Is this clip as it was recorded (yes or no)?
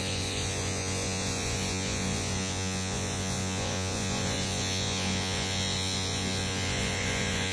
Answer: no